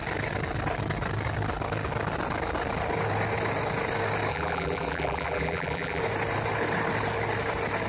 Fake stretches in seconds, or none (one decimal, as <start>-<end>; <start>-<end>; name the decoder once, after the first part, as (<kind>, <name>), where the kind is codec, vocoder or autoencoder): 4.3-6.0 (vocoder, BigVGAN v2)